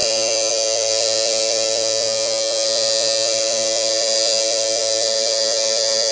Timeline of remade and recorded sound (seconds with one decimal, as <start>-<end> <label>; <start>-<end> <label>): 0.0-6.1 recorded